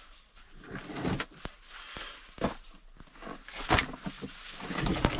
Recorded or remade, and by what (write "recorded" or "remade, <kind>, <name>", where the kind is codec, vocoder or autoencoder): recorded